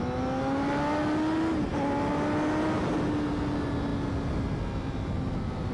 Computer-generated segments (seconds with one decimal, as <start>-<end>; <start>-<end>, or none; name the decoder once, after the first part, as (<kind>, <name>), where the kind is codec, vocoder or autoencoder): none